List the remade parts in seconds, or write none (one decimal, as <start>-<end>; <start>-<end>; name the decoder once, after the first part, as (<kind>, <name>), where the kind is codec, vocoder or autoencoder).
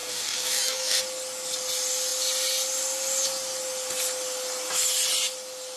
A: 0.0-1.0 (codec, DAC)